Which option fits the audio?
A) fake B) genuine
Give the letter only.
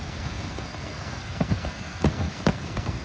A